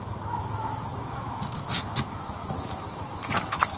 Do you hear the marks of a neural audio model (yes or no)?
yes